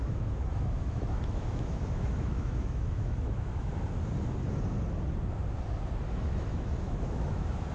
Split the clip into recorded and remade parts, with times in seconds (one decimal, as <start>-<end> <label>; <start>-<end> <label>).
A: 0.0-3.7 remade; 3.7-6.1 recorded; 6.1-7.7 remade